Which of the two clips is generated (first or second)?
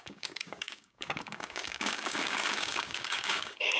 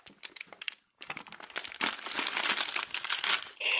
first